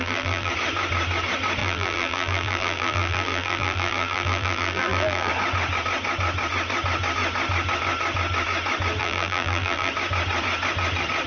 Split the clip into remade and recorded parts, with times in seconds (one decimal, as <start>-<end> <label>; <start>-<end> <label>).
0.0-0.5 remade; 0.5-1.6 recorded; 1.6-5.3 remade; 5.3-9.0 recorded; 9.0-9.9 remade; 9.9-11.3 recorded